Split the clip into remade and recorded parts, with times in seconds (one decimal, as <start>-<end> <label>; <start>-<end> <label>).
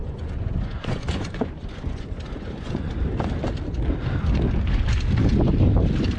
0.0-2.9 remade; 2.9-6.2 recorded